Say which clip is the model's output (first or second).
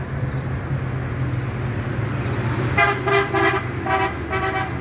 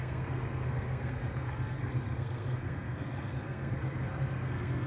second